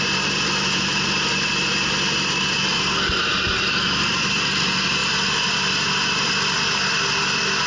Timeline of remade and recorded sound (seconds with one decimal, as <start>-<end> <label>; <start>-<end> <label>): 0.0-7.7 recorded

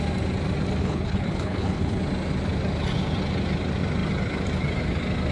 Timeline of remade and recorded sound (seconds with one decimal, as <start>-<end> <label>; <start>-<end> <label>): 0.0-0.8 recorded; 0.8-2.0 remade; 2.0-5.3 recorded